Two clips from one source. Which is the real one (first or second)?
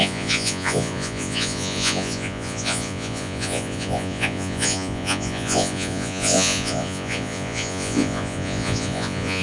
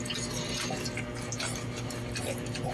second